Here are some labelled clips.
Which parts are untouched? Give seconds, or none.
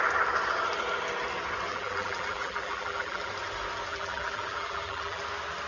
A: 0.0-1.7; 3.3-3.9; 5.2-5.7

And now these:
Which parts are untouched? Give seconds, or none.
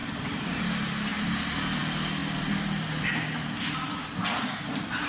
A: 0.6-2.2; 3.6-5.1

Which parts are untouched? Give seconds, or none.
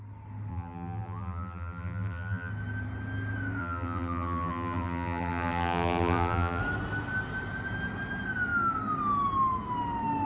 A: 0.0-0.5; 2.5-3.6; 6.6-10.3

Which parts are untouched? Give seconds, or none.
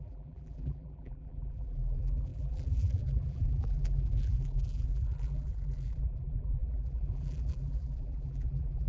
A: none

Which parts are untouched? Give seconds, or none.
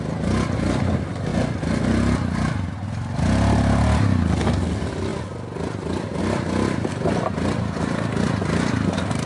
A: 0.0-9.3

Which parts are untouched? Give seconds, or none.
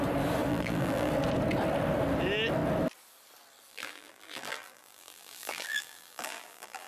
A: 0.0-0.5; 1.1-3.7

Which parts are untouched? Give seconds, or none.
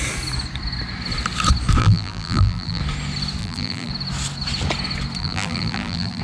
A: 0.0-1.8; 2.8-3.4; 3.9-5.2